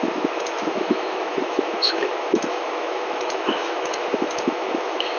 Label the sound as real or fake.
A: fake